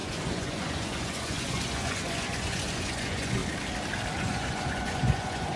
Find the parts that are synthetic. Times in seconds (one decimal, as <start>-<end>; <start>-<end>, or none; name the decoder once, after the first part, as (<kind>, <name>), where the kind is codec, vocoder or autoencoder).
0.0-3.4 (vocoder, Vocos); 4.2-5.6